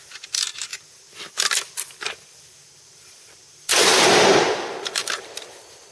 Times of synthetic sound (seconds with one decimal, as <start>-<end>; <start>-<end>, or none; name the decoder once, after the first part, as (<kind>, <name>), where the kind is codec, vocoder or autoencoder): 0.0-0.7 (vocoder, BigVGAN v2); 2.1-5.9